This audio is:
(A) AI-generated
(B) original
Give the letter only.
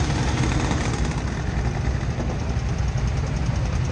B